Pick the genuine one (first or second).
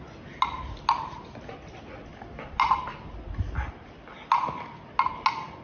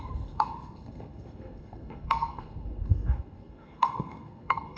first